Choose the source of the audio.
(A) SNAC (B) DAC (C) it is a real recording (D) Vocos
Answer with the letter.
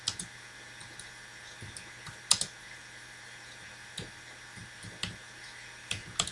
C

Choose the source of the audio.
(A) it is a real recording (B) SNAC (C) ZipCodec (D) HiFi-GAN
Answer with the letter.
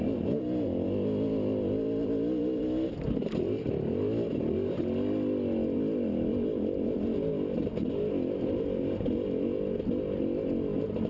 A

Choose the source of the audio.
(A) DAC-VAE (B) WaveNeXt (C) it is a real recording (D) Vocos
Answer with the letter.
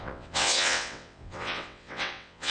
B